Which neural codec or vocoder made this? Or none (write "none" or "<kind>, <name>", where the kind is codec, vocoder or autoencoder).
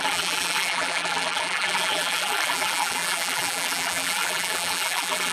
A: vocoder, BigVGAN v2